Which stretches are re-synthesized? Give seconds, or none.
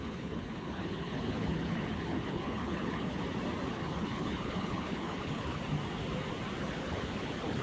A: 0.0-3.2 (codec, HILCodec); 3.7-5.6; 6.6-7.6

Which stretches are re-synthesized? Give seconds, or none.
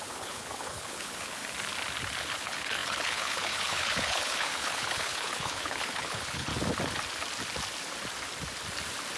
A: 0.0-1.4 (codec, HILCodec); 2.2-6.5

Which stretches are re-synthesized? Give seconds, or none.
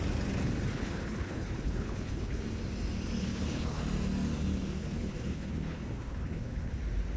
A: 0.7-2.4 (codec, HILCodec); 3.2-3.8; 4.8-6.8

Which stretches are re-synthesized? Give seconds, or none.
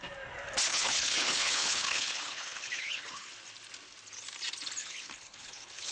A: 0.7-3.3 (codec, HILCodec); 4.8-5.9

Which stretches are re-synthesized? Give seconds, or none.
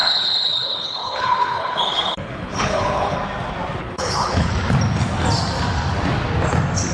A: 0.0-3.2 (codec, HILCodec); 3.8-4.5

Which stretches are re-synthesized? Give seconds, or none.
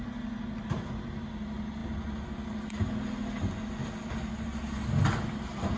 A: none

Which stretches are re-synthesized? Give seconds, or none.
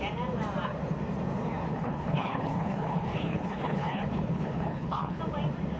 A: 1.7-5.2 (codec, HILCodec)